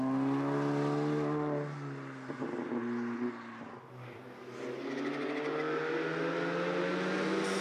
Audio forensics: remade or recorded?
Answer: recorded